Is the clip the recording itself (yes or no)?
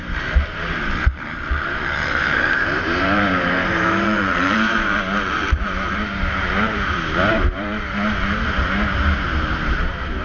no